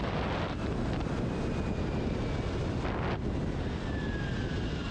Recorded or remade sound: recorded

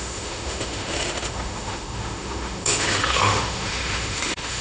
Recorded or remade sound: remade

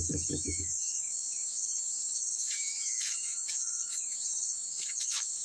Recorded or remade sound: remade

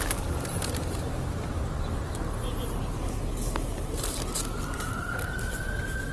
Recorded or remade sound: recorded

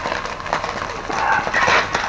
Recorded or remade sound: recorded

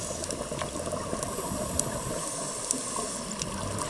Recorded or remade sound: recorded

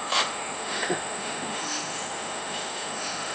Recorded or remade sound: remade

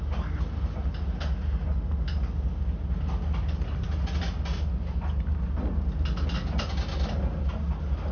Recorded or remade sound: recorded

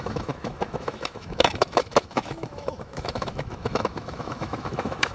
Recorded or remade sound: remade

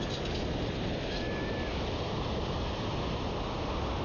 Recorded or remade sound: recorded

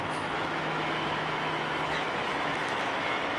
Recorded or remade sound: remade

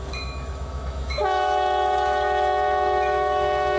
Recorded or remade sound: remade